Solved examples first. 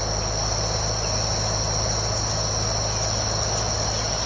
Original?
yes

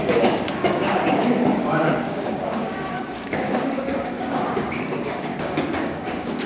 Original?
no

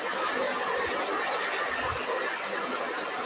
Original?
yes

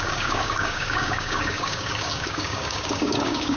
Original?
no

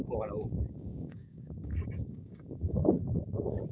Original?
no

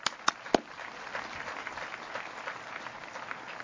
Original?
yes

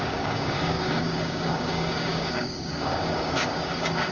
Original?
no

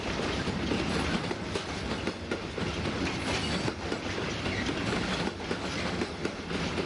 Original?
yes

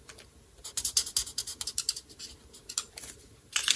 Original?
yes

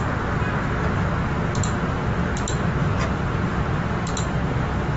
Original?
yes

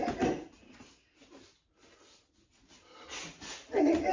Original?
yes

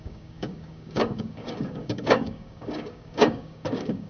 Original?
no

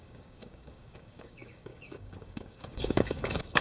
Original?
no